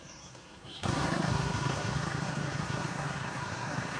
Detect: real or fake fake